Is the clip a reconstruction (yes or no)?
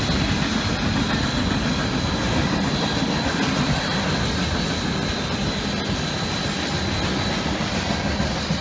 no